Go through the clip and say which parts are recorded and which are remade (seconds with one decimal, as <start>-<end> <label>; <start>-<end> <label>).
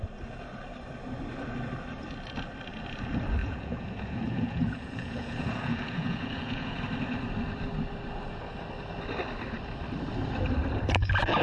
0.0-3.4 recorded; 3.4-6.8 remade; 6.8-11.4 recorded